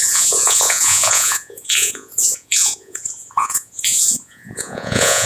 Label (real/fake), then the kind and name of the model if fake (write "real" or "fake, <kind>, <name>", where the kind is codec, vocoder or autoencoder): fake, vocoder, Vocos